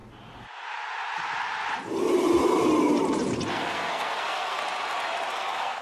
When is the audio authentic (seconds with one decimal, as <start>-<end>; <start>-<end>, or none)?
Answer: 0.0-3.5; 4.6-5.3